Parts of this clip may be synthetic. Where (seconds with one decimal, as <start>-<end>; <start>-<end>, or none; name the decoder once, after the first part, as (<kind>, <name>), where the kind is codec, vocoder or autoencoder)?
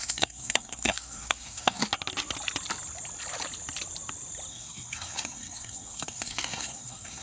0.0-1.8 (codec, SNAC); 4.5-7.2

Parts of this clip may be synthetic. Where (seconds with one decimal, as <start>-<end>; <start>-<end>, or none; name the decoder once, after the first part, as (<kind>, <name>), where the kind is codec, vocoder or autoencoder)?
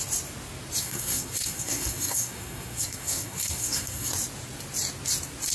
0.8-4.1 (codec, SNAC)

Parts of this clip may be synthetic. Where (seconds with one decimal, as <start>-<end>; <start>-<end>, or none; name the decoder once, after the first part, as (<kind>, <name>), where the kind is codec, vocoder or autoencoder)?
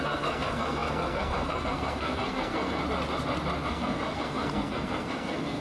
0.0-2.8 (codec, SNAC); 3.7-5.6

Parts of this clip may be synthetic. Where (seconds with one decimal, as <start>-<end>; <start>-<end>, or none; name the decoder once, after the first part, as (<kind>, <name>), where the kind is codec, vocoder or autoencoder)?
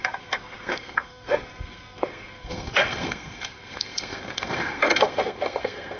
0.0-6.0 (codec, SNAC)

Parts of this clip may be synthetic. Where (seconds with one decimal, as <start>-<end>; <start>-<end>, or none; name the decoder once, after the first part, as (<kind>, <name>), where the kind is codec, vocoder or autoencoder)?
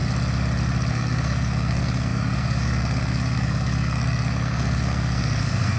0.9-5.8 (codec, SNAC)